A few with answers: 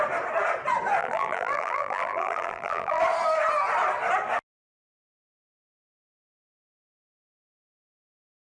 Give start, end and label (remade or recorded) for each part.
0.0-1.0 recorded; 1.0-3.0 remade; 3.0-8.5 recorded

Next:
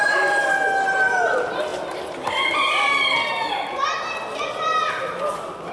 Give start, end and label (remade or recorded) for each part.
0.0-5.7 recorded

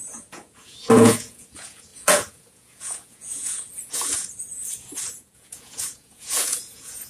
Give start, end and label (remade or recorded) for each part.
0.0-7.1 remade